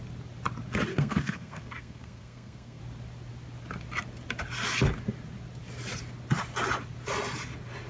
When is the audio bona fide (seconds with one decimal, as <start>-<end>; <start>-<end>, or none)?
0.0-0.9; 2.8-7.9